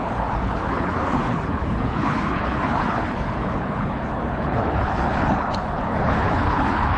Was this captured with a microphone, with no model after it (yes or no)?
no